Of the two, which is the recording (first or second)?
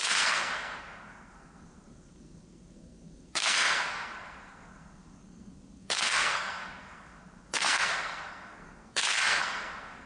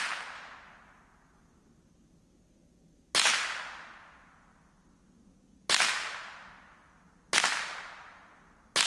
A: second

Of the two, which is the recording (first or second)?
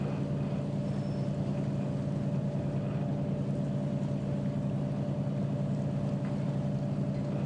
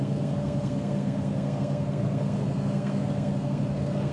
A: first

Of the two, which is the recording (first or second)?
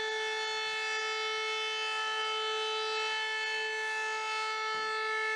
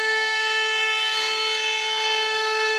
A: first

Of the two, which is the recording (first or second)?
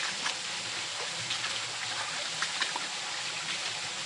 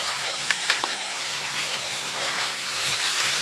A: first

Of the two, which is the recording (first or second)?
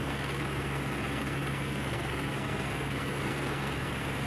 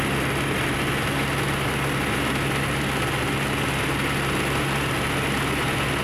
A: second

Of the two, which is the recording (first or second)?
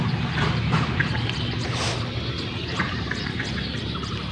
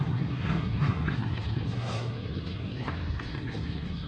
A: first